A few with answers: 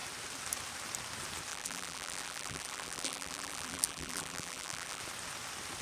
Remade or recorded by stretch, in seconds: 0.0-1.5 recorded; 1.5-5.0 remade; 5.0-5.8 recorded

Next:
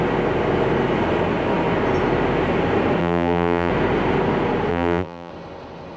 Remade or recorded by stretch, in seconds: 0.0-3.0 recorded; 3.0-3.7 remade; 3.7-4.7 recorded; 4.7-5.3 remade; 5.3-6.0 recorded

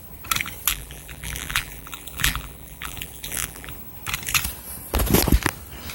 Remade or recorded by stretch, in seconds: 0.0-0.7 recorded; 0.7-3.7 remade; 3.7-5.9 recorded

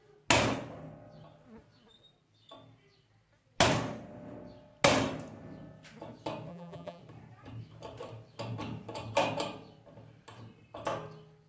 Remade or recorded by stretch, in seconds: 0.0-6.5 recorded; 6.5-7.0 remade; 7.0-11.5 recorded